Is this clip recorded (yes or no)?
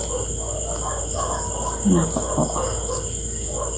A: yes